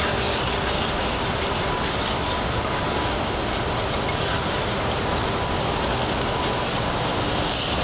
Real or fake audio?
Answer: real